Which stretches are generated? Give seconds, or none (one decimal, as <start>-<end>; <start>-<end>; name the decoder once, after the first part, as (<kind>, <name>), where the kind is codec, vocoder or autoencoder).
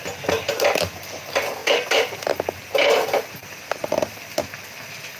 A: none